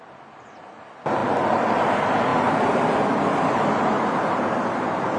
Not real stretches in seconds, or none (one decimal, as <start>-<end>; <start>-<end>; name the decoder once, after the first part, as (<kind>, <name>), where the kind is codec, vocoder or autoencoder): none